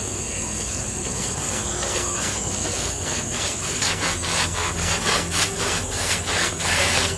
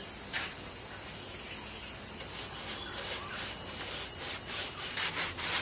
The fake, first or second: first